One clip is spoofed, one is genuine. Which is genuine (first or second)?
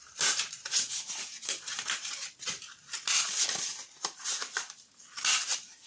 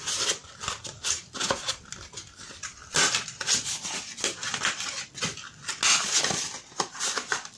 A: second